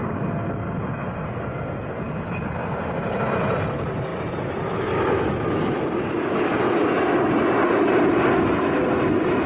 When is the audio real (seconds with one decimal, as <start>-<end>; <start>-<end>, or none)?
0.0-9.5